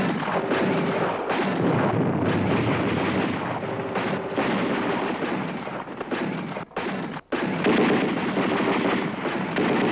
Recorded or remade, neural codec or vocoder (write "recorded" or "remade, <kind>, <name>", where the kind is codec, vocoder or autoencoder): recorded